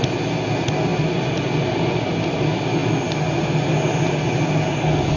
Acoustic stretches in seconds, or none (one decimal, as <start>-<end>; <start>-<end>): 0.0-5.2